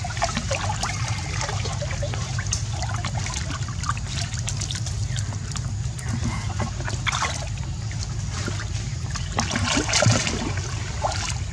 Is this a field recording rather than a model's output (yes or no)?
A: yes